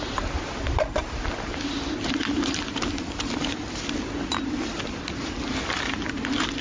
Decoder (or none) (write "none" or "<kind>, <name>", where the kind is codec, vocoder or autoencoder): none